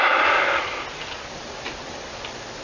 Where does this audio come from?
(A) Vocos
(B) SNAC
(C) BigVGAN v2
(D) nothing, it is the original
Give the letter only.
D